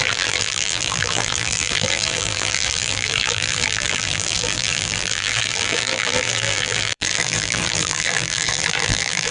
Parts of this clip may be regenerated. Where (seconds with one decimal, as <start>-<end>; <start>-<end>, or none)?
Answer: 0.0-9.3